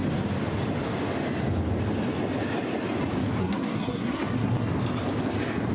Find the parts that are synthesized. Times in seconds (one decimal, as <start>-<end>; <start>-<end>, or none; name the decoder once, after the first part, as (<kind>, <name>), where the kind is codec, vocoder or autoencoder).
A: 3.4-4.7 (codec, SNAC)